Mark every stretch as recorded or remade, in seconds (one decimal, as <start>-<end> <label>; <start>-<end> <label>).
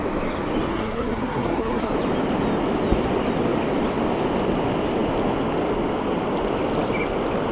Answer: 0.0-0.7 recorded; 0.7-1.9 remade; 1.9-7.5 recorded